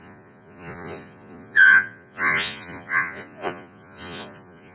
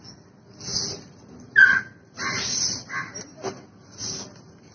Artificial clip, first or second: first